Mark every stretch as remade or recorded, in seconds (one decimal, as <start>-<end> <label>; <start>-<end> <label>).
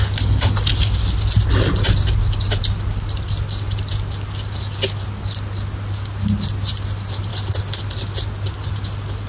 0.0-9.3 recorded